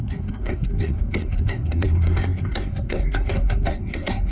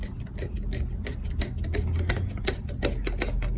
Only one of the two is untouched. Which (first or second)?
second